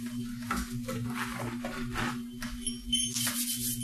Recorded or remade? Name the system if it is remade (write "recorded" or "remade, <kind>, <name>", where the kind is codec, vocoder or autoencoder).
recorded